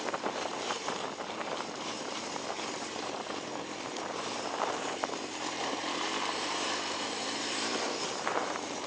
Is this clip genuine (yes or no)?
no